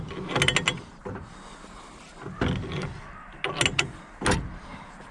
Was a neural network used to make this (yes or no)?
no